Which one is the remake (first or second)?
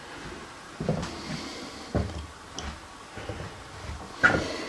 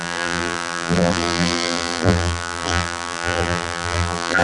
second